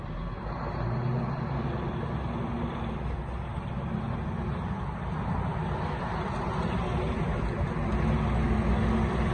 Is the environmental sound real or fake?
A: real